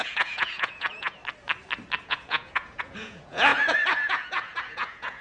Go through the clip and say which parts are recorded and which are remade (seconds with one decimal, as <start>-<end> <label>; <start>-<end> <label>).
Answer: 0.0-1.2 remade; 1.2-2.0 recorded; 2.0-5.2 remade